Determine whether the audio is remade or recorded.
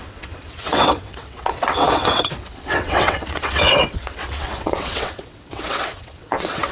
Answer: remade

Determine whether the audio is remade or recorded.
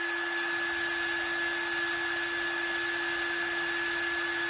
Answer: recorded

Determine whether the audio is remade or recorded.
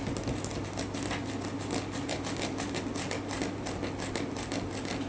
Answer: recorded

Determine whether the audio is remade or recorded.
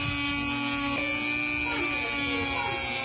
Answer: recorded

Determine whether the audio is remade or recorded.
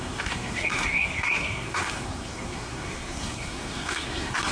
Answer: remade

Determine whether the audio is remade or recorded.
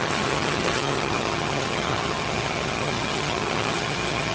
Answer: remade